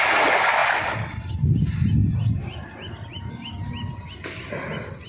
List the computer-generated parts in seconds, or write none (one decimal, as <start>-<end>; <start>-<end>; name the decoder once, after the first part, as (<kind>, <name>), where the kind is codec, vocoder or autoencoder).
none